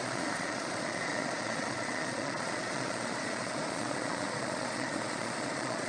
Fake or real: fake